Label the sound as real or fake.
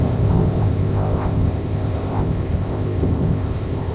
fake